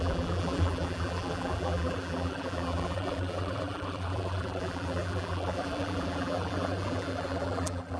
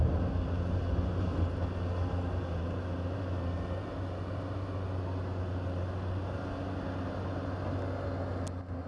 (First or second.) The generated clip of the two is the first